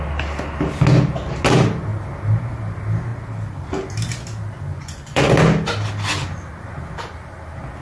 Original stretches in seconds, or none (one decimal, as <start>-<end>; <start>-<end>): 0.0-4.7; 5.3-7.8